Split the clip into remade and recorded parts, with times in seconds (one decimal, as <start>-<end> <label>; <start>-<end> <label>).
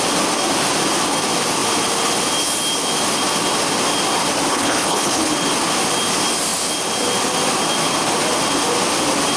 0.0-4.5 recorded; 4.5-5.3 remade; 5.3-9.4 recorded